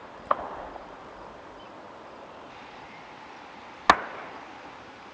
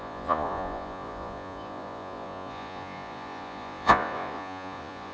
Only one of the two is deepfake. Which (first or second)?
second